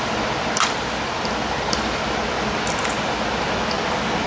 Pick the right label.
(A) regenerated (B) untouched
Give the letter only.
B